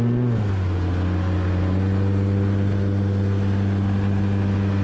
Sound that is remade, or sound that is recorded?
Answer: recorded